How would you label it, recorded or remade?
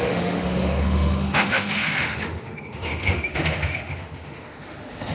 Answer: remade